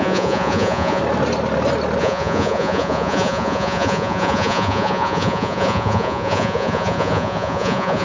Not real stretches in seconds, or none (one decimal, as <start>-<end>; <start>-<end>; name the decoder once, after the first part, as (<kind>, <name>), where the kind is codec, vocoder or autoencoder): 0.0-1.0 (vocoder, Vocos); 2.0-8.0